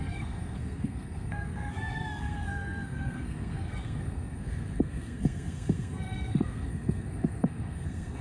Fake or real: fake